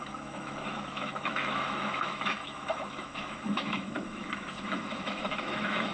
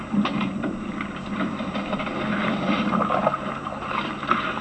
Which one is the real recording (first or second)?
second